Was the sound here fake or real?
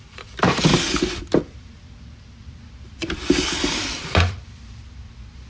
fake